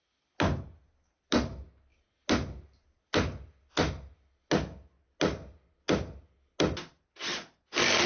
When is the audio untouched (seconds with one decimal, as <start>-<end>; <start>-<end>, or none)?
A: 0.0-8.1